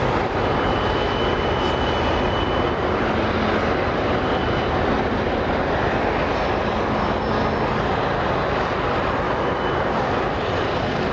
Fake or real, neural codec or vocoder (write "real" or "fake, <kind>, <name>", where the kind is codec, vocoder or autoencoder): real